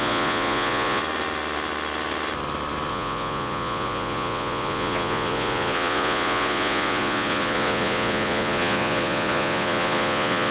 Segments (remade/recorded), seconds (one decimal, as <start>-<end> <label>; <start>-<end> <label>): 0.0-1.0 remade; 1.0-2.9 recorded; 2.9-10.5 remade